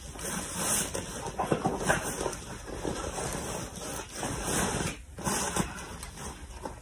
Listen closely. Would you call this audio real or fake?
real